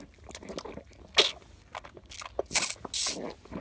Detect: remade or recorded recorded